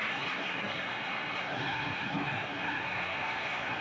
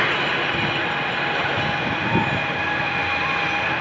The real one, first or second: second